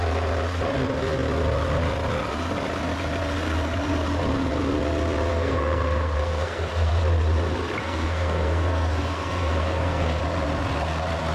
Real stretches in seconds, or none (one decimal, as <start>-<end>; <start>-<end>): 0.0-5.3; 6.9-7.8; 10.2-11.3